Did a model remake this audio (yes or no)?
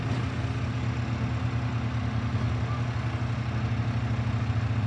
no